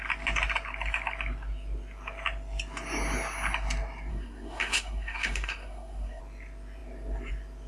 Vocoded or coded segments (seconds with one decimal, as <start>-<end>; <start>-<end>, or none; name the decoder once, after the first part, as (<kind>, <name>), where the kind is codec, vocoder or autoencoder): 4.1-6.2 (codec, SNAC)